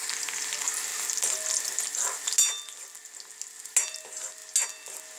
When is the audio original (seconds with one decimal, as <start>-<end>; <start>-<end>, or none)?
0.9-4.0; 4.4-5.2